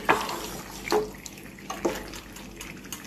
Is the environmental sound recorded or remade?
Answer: recorded